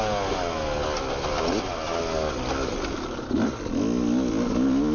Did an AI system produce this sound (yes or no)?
no